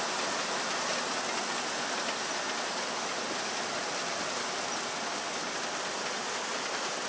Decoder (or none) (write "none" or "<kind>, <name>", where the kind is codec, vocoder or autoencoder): none